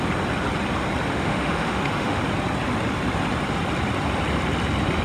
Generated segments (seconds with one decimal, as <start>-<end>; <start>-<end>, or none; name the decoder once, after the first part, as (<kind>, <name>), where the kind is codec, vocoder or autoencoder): 1.1-2.2 (autoencoder, DAC-VAE)